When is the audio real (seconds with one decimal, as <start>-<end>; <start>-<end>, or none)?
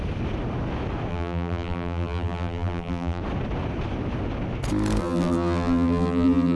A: 0.0-1.1; 3.2-5.0